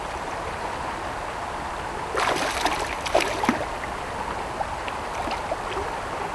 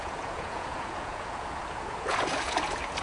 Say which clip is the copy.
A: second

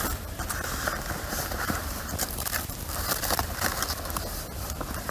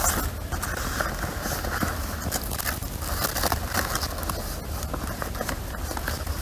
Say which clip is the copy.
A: first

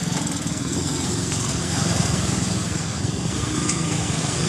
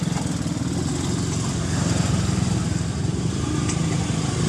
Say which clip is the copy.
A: first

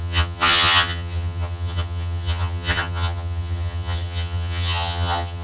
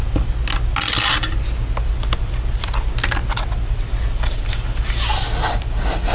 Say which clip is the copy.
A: first